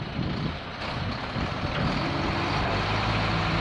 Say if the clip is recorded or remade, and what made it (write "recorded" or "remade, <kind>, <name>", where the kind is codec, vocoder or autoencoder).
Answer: remade, vocoder, BigVGAN v2